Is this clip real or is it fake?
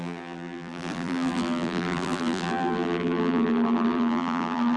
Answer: fake